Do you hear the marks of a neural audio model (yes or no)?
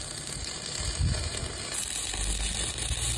no